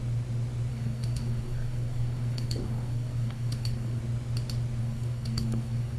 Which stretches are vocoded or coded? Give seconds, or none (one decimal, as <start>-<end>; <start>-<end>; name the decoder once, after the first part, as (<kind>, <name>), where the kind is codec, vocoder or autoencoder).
0.7-4.0 (codec, SNAC); 4.8-6.0